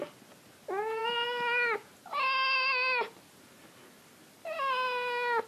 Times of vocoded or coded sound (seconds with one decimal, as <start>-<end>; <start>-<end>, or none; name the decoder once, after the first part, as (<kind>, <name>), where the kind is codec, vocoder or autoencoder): none